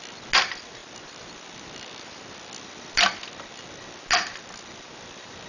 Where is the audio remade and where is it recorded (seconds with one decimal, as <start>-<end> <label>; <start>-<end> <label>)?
0.0-5.5 recorded